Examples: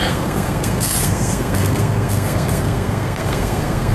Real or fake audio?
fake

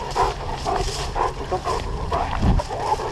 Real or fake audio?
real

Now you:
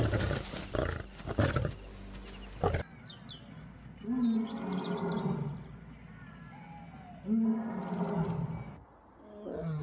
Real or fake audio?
real